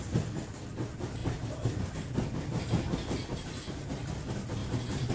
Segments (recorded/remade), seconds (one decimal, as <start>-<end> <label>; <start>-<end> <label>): 0.0-1.2 recorded; 1.2-1.8 remade; 1.8-3.2 recorded; 3.2-4.0 remade; 4.0-4.6 recorded; 4.6-5.1 remade